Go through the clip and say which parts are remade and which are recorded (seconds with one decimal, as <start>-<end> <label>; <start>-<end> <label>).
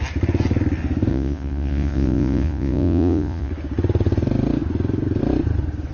0.0-1.1 recorded; 1.1-3.5 remade; 3.5-5.9 recorded